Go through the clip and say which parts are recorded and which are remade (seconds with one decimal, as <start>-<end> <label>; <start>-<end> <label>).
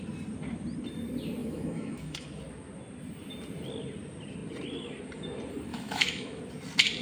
0.0-1.4 recorded; 1.4-2.4 remade; 2.4-5.7 recorded; 5.7-6.4 remade; 6.4-7.0 recorded